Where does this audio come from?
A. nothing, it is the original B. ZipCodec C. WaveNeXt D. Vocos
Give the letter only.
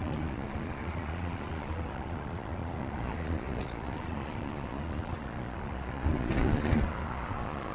D